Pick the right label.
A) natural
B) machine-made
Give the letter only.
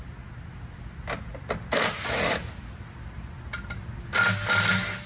A